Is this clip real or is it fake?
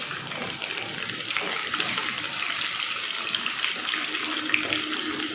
real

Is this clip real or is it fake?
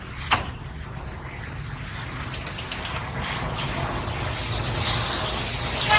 real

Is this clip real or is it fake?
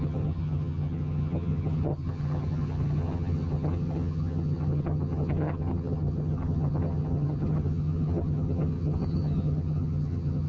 fake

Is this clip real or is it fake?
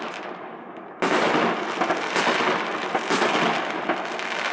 real